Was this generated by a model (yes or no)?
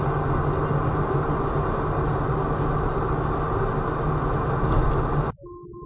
no